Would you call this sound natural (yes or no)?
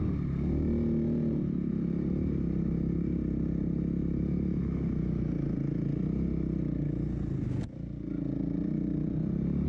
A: yes